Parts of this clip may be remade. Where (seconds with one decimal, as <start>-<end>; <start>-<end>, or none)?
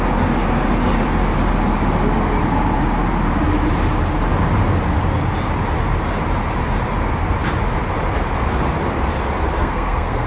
9.6-10.3